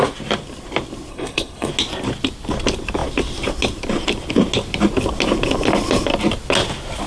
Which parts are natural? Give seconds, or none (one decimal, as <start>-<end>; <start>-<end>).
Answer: 0.0-1.1; 1.7-7.1